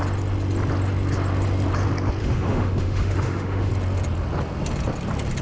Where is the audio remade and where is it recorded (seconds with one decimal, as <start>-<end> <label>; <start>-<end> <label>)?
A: 0.0-2.2 recorded; 2.2-3.7 remade; 3.7-5.4 recorded